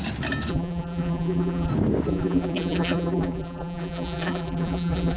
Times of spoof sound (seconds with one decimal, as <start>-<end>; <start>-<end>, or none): 0.5-1.7; 2.1-5.2